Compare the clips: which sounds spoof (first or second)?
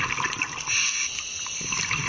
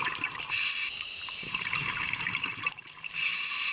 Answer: second